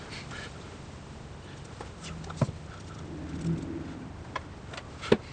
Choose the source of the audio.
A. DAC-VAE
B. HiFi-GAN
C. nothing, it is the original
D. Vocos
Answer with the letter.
C